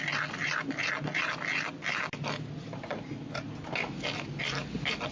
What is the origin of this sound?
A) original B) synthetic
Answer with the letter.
A